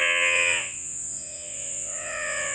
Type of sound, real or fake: fake